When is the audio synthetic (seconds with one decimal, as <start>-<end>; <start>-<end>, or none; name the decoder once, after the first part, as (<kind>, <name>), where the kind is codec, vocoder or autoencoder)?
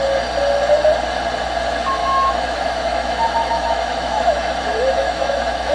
2.0-5.7 (autoencoder, DAC-VAE)